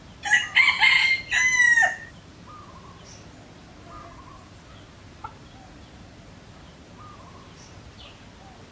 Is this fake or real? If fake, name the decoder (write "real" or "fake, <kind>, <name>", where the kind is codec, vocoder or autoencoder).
real